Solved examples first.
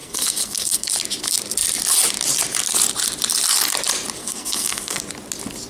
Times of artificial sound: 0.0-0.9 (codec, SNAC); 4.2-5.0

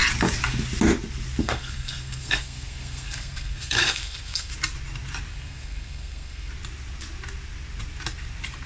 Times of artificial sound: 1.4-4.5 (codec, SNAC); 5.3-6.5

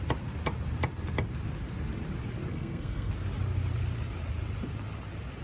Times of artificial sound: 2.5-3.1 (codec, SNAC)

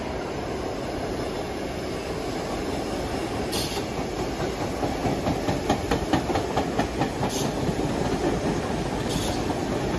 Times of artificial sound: none

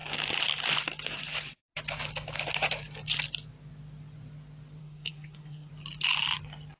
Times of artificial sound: 4.8-5.7 (codec, SNAC)